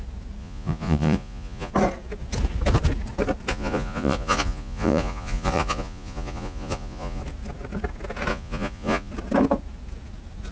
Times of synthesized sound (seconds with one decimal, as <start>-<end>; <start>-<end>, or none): 0.4-1.7; 3.5-7.2; 8.3-9.1

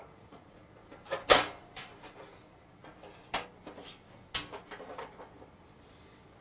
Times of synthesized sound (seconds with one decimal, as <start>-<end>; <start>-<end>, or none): 0.0-0.8; 2.4-2.8; 5.0-6.4

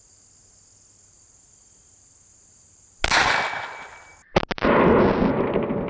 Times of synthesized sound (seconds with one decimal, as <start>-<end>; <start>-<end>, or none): none

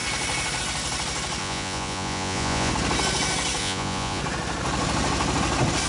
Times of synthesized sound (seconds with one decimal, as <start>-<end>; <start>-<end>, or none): 1.4-2.7; 3.6-4.2